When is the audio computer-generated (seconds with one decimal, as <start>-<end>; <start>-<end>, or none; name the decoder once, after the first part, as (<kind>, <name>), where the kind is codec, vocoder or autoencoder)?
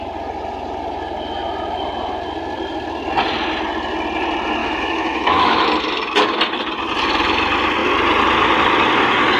4.6-5.6 (autoencoder, DAC-VAE)